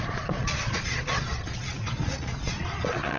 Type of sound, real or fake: fake